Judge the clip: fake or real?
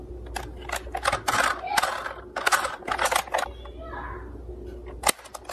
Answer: real